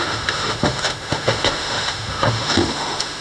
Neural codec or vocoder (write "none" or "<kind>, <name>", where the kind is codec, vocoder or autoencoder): autoencoder, DAC-VAE